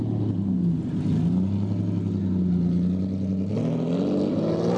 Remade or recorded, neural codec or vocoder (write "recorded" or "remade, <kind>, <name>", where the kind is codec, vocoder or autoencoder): recorded